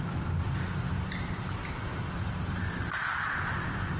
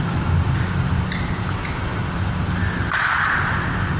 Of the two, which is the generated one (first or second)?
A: first